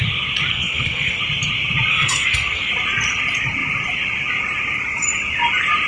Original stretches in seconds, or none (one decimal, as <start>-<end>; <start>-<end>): 0.0-0.5; 1.2-1.9; 2.7-5.9